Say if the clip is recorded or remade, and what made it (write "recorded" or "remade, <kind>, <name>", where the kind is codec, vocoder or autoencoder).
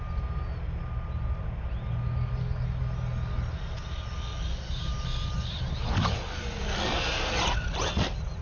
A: recorded